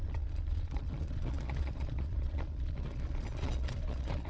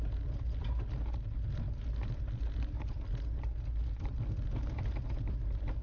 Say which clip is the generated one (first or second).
first